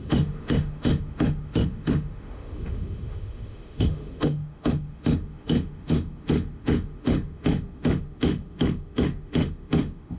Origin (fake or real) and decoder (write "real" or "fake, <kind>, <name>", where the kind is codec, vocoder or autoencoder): fake, autoencoder, DAC-VAE